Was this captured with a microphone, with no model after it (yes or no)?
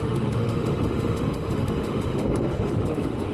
no